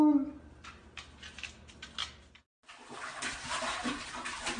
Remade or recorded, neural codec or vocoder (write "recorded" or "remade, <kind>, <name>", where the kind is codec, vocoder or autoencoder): recorded